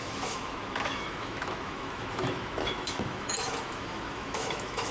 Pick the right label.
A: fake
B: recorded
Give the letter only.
A